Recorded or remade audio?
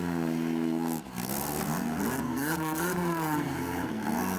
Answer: remade